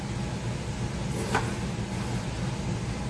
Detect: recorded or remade recorded